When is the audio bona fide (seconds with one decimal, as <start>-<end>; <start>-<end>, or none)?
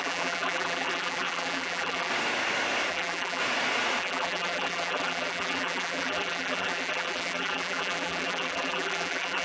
2.1-2.9; 3.4-4.0